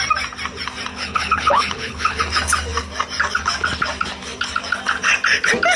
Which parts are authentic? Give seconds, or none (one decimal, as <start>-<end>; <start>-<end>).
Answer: 0.0-0.9; 2.2-5.8